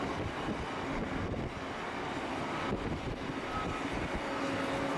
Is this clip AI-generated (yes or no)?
no